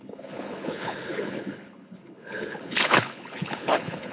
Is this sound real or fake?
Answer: fake